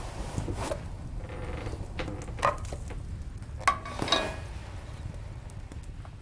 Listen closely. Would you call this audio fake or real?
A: real